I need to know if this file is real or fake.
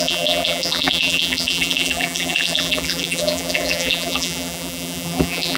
fake